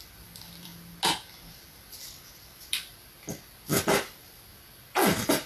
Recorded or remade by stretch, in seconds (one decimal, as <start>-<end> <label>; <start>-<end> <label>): 0.0-0.7 remade; 0.7-2.7 recorded; 2.7-5.5 remade